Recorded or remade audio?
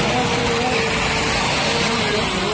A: recorded